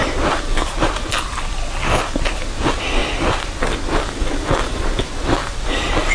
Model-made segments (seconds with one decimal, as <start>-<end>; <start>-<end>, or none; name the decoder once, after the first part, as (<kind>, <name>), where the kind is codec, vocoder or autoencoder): 0.0-1.1 (vocoder, BigVGAN v2)